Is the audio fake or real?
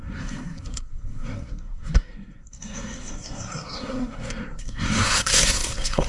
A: fake